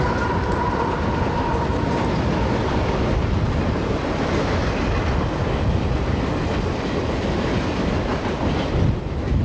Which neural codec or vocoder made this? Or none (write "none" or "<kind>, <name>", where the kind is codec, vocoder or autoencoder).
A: none